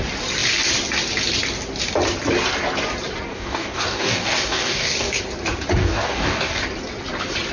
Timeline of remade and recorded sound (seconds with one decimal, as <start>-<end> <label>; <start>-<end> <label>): 0.0-3.3 recorded; 3.3-5.2 remade; 5.2-5.8 recorded; 5.8-6.6 remade; 6.6-7.5 recorded